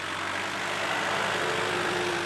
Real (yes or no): no